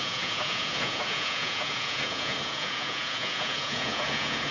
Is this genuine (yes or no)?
no